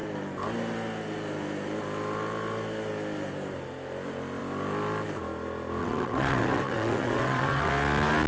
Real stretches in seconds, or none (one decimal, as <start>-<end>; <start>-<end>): 0.0-5.8; 7.7-8.3